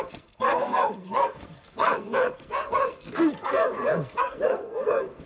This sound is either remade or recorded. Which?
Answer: remade